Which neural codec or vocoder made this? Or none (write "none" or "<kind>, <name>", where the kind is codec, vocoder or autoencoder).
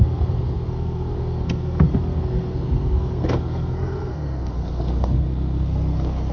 codec, SNAC